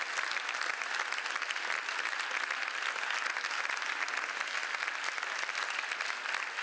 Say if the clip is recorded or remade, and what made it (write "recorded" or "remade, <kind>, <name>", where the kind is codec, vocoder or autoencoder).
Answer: recorded